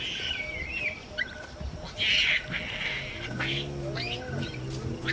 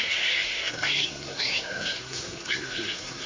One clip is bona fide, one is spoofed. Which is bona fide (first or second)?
first